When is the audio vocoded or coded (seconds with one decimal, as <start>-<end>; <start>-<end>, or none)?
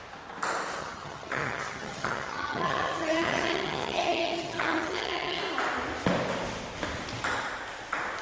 0.8-5.4